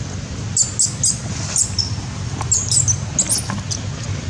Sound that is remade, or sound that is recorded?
recorded